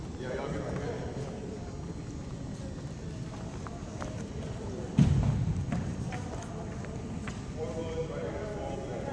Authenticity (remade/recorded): remade